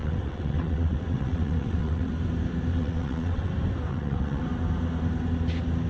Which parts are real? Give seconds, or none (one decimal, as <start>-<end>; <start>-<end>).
2.1-2.7; 3.5-3.9; 4.4-5.9